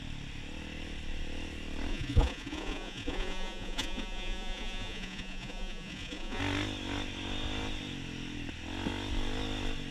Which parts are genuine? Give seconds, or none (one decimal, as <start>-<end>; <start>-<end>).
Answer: 0.0-1.9; 6.4-9.9